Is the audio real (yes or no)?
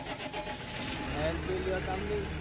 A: yes